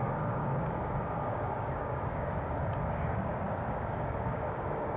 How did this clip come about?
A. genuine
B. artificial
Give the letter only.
B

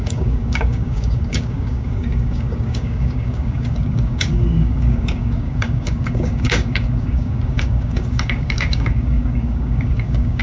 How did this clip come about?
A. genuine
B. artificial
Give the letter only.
B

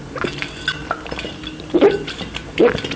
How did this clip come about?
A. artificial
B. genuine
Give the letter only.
B